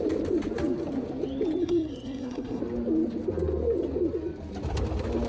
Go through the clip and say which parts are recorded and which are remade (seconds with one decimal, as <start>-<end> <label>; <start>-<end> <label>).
0.0-1.6 recorded; 1.6-2.6 remade; 2.6-5.3 recorded